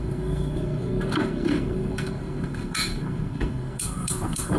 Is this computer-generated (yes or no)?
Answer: yes